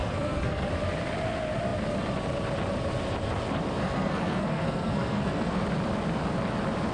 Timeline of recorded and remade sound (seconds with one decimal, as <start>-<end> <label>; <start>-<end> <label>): 0.0-0.7 remade; 0.7-3.8 recorded; 3.8-5.6 remade; 5.6-6.9 recorded